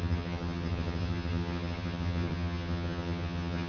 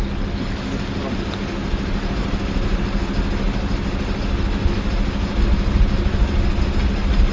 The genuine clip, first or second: second